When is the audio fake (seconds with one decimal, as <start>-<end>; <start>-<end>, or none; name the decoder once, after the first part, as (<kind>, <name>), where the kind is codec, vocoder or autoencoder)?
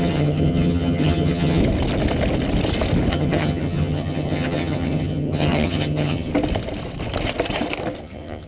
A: 0.0-1.6 (vocoder, HiFi-GAN); 3.1-6.3; 8.0-8.5